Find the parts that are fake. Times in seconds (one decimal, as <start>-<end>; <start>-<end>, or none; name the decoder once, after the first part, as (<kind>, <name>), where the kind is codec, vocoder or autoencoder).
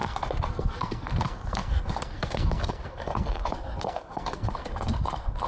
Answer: 0.0-5.5 (codec, SNAC)